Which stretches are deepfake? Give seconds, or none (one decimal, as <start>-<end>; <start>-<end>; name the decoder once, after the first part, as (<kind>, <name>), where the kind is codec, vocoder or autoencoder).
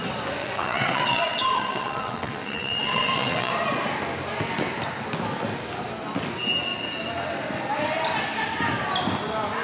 0.4-3.5 (vocoder, WaveNeXt)